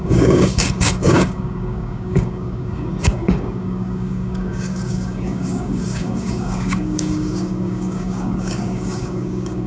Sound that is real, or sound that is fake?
fake